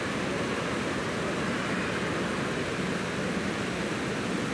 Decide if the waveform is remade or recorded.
recorded